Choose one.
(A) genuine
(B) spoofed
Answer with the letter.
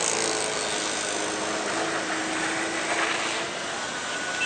A